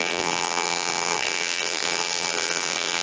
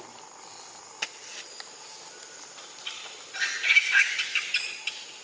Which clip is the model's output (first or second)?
first